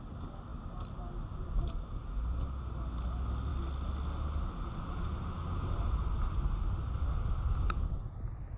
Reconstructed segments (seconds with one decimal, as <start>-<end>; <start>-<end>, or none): none